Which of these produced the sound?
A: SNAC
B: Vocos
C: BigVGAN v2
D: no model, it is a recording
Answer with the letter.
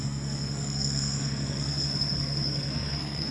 A